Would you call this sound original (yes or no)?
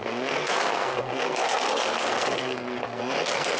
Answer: no